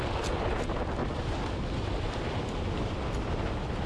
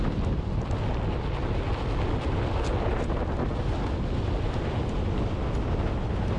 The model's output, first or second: first